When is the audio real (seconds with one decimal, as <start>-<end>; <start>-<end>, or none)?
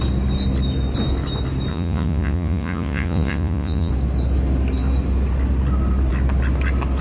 0.0-1.7; 3.9-7.0